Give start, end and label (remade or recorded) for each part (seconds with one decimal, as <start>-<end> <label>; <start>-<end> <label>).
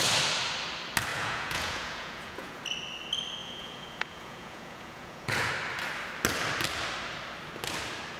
0.0-1.1 recorded; 1.1-2.6 remade; 2.6-3.4 recorded; 3.4-5.5 remade; 5.5-8.2 recorded